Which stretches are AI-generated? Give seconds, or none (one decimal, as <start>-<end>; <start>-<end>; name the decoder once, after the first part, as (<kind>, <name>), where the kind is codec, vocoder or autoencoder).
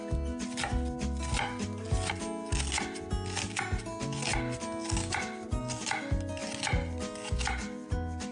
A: none